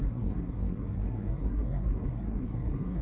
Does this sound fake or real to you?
fake